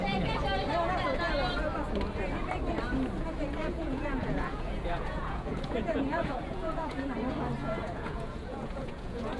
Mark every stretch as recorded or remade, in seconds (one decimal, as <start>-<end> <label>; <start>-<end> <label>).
0.0-3.6 recorded; 3.6-7.0 remade; 7.0-7.6 recorded; 7.6-9.4 remade

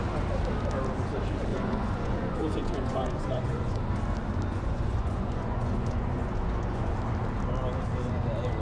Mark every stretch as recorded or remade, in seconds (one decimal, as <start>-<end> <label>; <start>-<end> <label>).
0.0-1.5 recorded; 1.5-3.8 remade; 3.8-4.5 recorded; 4.5-6.9 remade; 6.9-8.6 recorded

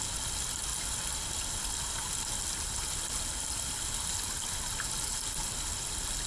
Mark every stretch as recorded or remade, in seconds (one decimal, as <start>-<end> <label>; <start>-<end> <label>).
0.0-6.3 recorded

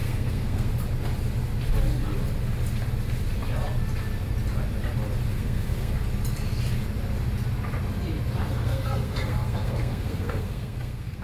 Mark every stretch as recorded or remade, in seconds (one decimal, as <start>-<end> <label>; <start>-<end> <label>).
0.0-0.7 remade; 0.7-5.3 recorded; 5.3-5.9 remade; 5.9-8.4 recorded; 8.4-11.2 remade

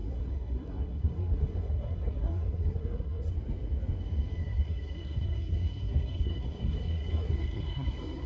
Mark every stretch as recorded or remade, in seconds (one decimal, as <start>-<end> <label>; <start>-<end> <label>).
0.0-3.3 remade; 3.3-4.4 recorded; 4.4-8.3 remade

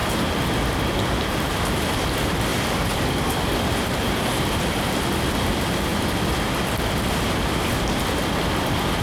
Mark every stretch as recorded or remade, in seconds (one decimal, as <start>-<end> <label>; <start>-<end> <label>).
0.0-0.8 recorded; 0.8-9.0 remade